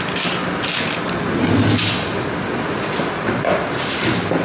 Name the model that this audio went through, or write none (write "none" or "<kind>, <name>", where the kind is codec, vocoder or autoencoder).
none